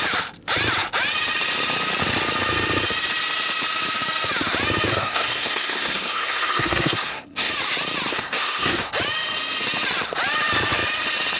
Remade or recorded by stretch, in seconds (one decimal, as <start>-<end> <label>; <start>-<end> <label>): 0.0-4.9 recorded; 4.9-7.5 remade; 7.5-8.1 recorded; 8.1-8.9 remade; 8.9-11.4 recorded